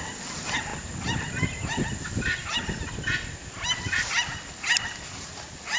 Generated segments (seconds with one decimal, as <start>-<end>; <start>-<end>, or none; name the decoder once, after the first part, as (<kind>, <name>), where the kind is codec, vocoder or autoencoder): none